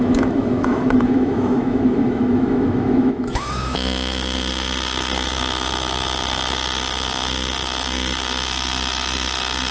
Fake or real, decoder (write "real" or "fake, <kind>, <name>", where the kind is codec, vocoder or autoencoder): fake, autoencoder, DAC-VAE